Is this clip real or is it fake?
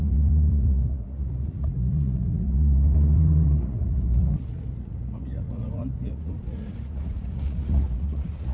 fake